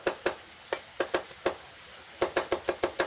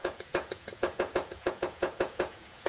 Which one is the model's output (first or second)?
second